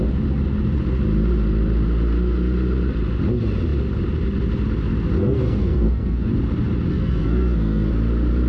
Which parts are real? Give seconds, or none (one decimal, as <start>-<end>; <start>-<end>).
0.0-5.2; 6.3-6.9; 7.9-8.5